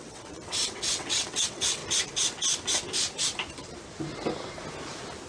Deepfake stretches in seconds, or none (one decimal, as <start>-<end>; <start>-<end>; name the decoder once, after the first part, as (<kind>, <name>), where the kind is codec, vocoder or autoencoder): 0.0-1.8 (vocoder, WaveNeXt)